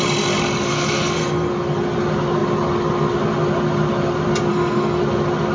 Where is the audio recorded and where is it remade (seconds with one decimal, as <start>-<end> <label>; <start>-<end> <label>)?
0.0-0.7 recorded; 0.7-1.5 remade; 1.5-4.5 recorded; 4.5-5.0 remade; 5.0-5.5 recorded